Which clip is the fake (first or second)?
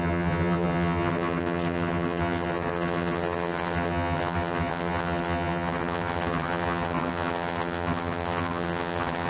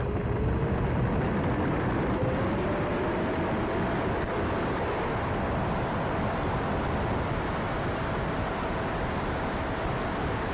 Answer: first